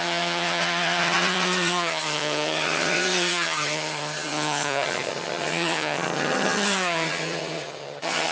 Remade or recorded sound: remade